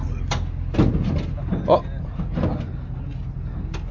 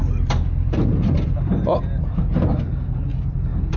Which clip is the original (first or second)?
first